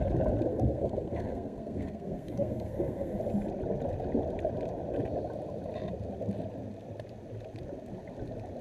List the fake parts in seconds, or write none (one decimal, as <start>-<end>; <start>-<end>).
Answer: 0.5-3.2